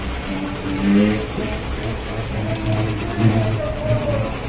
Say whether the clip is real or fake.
real